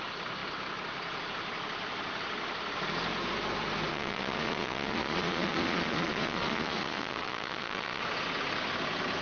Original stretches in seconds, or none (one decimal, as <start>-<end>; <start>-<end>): 0.0-3.9; 8.0-9.2